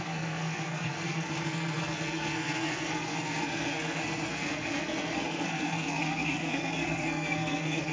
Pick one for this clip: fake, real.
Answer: fake